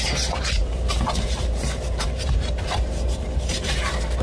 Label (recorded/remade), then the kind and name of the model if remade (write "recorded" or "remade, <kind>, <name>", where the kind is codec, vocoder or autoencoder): remade, vocoder, BigVGAN v2